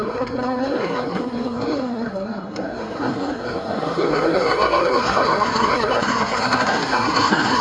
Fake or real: fake